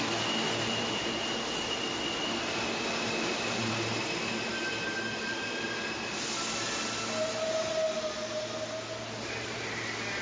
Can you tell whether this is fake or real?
real